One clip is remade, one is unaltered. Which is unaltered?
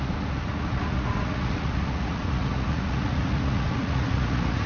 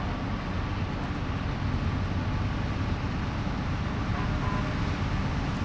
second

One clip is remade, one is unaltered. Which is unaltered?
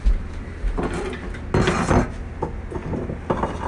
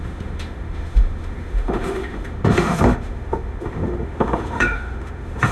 first